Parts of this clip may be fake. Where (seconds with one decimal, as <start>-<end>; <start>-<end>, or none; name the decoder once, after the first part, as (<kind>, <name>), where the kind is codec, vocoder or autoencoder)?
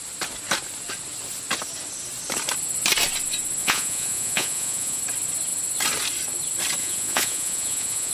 3.6-5.0 (vocoder, Vocos); 6.8-8.1